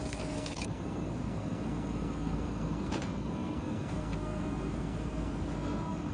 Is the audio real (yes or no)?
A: no